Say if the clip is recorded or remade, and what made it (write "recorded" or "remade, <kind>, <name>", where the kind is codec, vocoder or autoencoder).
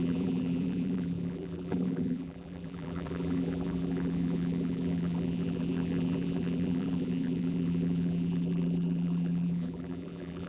remade, vocoder, BigVGAN v2